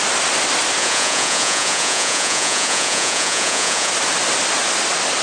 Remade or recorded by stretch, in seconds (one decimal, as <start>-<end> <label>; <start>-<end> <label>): 0.0-0.8 recorded; 0.8-3.9 remade; 3.9-5.2 recorded